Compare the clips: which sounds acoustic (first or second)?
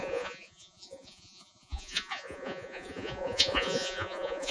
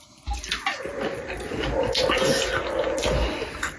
second